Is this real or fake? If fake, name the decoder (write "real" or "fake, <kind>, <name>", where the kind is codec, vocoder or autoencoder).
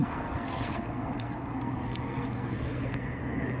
fake, codec, SNAC